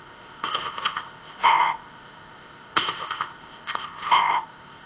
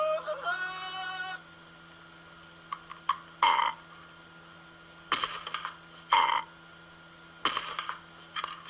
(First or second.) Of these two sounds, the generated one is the first